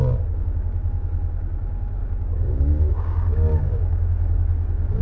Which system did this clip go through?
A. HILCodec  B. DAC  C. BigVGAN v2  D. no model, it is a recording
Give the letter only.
B